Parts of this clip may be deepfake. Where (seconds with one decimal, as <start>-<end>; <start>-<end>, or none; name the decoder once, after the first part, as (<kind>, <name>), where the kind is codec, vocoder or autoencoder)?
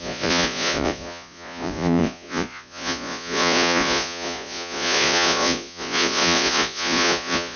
0.0-7.6 (vocoder, Vocos)